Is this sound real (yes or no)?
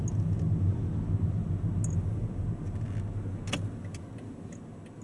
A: yes